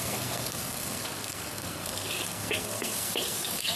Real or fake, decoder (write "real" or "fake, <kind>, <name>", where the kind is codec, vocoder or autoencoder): fake, codec, SNAC